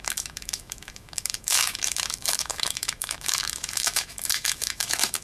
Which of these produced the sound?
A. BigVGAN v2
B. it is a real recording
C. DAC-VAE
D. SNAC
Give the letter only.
C